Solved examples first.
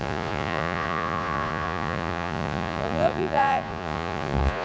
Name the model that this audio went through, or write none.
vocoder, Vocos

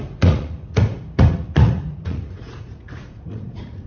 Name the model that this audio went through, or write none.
vocoder, Vocos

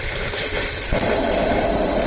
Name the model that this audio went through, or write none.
none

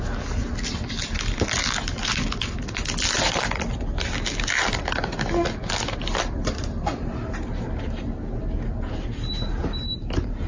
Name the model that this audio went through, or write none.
none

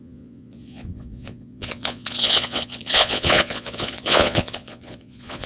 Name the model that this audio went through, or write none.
vocoder, Vocos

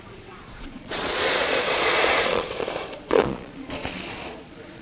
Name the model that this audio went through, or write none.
vocoder, Vocos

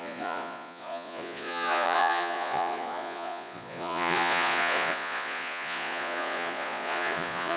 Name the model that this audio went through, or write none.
vocoder, Vocos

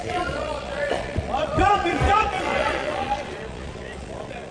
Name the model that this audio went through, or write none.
vocoder, Vocos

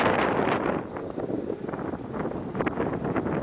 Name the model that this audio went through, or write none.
none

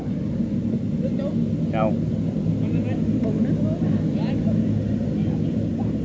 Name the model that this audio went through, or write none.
none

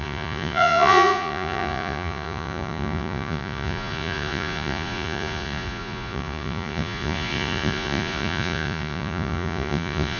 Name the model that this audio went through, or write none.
vocoder, Vocos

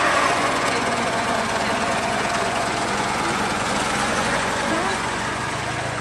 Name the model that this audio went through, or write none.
vocoder, Vocos